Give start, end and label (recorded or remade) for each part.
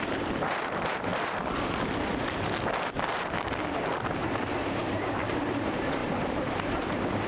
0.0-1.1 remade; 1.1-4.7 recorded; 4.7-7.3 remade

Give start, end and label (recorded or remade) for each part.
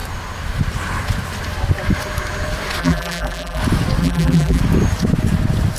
0.0-2.8 recorded; 2.8-3.6 remade; 3.6-4.0 recorded; 4.0-4.6 remade; 4.6-5.8 recorded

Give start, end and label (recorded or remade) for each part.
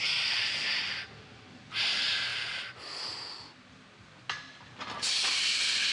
0.0-5.9 recorded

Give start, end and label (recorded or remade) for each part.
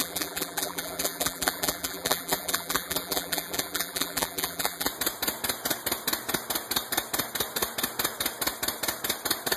0.0-4.9 remade; 4.9-9.6 recorded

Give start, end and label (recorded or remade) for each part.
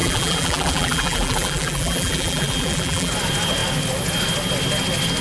0.0-3.1 remade; 3.1-5.2 recorded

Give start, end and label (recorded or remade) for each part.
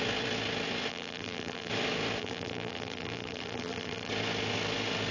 0.0-0.9 recorded; 0.9-1.7 remade; 1.7-2.2 recorded; 2.2-4.1 remade; 4.1-5.1 recorded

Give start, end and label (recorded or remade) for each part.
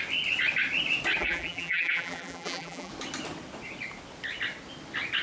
0.0-1.2 recorded; 1.2-2.9 remade; 2.9-5.2 recorded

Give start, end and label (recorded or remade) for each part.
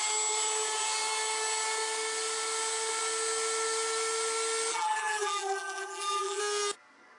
0.0-4.7 recorded; 4.7-6.4 remade; 6.4-7.2 recorded